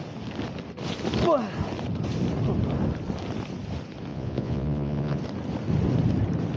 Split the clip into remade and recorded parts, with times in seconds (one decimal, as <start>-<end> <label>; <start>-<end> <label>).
0.0-4.1 recorded; 4.1-5.2 remade; 5.2-6.6 recorded